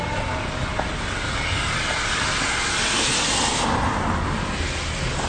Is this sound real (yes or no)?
yes